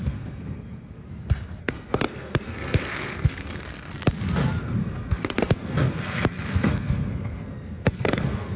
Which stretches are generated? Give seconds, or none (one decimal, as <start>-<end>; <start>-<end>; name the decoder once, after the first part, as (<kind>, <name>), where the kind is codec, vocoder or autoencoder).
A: 0.0-1.1 (codec, SNAC); 1.6-3.9; 4.6-8.6